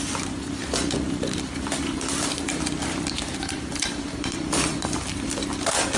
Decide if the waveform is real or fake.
fake